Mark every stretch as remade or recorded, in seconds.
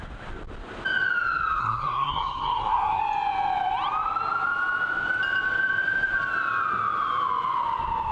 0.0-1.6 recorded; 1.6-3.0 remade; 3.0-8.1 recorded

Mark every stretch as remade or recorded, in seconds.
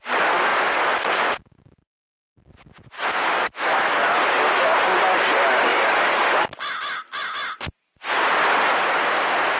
0.0-5.7 recorded; 5.7-8.3 remade; 8.3-9.6 recorded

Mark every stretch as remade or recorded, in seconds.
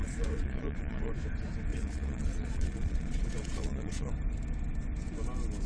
0.0-1.1 remade; 1.1-1.7 recorded; 1.7-4.1 remade; 4.1-5.7 recorded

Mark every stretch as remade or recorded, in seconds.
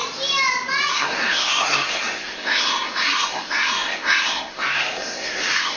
0.0-0.9 recorded; 0.9-5.8 remade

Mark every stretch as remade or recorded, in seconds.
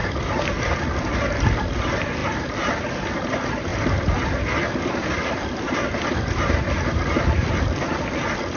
0.0-2.2 remade; 2.2-2.8 recorded; 2.8-8.6 remade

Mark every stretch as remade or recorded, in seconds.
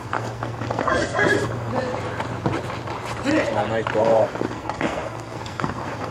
0.0-1.7 remade; 1.7-4.0 recorded; 4.0-6.1 remade